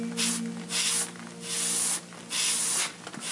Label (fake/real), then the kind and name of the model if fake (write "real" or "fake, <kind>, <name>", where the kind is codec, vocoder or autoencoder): real